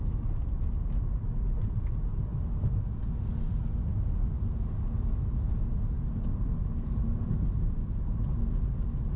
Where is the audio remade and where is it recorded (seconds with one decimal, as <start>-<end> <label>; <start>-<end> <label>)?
0.0-9.2 recorded